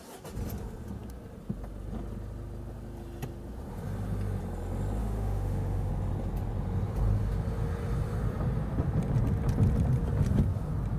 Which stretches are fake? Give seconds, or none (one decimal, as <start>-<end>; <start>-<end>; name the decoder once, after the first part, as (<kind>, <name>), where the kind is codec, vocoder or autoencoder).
5.0-5.9 (autoencoder, DAC-VAE)